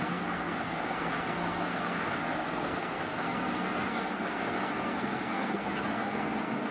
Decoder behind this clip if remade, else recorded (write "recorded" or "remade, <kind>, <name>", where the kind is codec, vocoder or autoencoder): remade, codec, SNAC